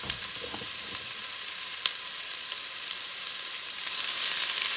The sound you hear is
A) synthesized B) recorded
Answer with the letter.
B